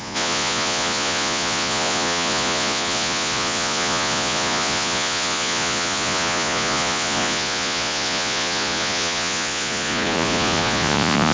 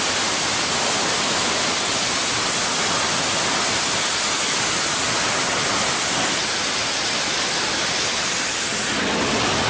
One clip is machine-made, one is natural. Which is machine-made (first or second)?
first